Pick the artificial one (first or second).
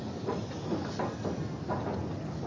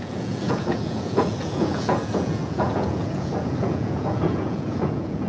second